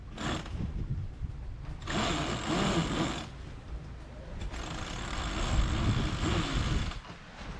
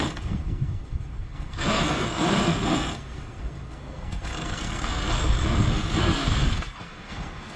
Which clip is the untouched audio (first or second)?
first